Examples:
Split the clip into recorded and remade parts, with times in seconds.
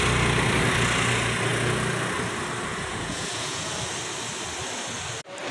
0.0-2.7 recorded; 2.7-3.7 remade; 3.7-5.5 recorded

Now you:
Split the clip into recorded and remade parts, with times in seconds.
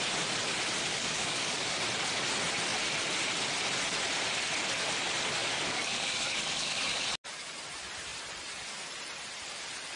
0.0-0.9 recorded; 0.9-1.8 remade; 1.8-5.4 recorded; 5.4-7.0 remade; 7.0-10.0 recorded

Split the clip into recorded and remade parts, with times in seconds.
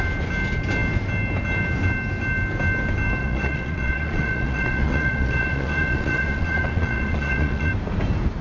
0.0-3.2 recorded; 3.2-7.7 remade; 7.7-8.4 recorded